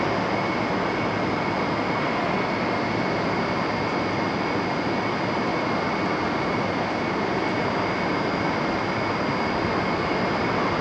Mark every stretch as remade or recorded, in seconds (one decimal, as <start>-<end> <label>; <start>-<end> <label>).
0.0-10.8 recorded